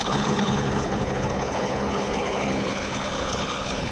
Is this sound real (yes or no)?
no